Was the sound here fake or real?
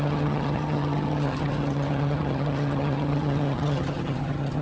fake